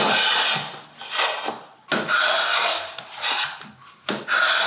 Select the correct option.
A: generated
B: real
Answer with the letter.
B